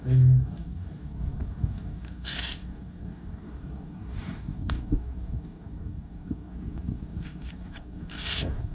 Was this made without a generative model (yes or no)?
no